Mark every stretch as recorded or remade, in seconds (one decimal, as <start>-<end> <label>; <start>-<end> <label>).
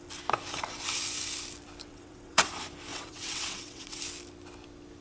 0.0-1.9 recorded; 1.9-2.5 remade; 2.5-2.9 recorded; 2.9-4.0 remade; 4.0-5.0 recorded